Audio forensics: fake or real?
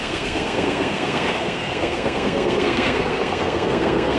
fake